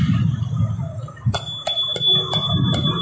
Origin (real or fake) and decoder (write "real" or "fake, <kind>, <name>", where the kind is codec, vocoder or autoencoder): real